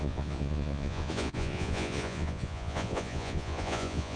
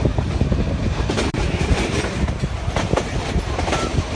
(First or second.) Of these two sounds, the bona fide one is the second